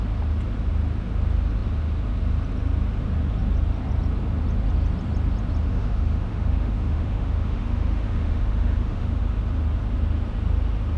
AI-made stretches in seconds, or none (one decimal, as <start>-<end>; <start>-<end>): 5.7-9.2